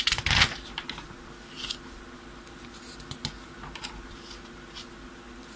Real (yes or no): yes